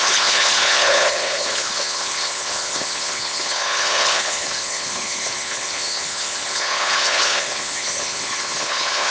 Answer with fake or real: fake